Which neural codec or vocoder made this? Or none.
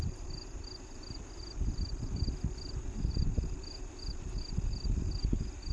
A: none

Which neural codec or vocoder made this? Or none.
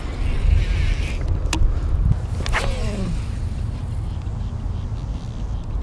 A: none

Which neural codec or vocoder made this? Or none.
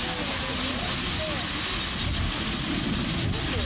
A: none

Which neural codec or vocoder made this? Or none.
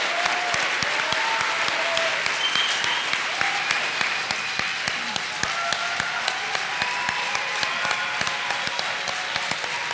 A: none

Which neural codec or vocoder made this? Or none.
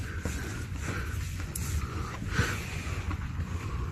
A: vocoder, Vocos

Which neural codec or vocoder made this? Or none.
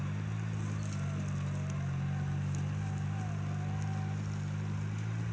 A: none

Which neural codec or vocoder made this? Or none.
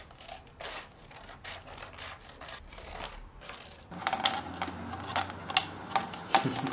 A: none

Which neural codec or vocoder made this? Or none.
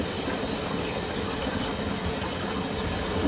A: none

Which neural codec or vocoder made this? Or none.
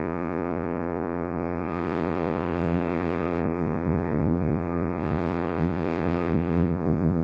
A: vocoder, Vocos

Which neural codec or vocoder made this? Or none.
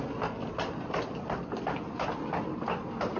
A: none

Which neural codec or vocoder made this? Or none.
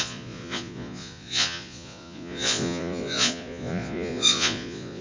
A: vocoder, Vocos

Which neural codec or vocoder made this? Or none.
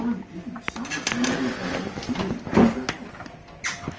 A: none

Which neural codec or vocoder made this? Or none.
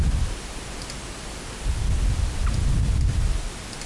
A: none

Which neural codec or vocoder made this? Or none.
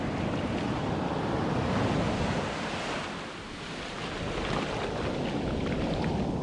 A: none